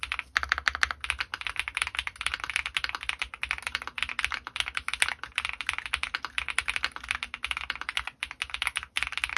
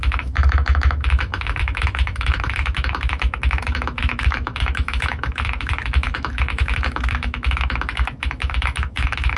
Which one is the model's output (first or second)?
second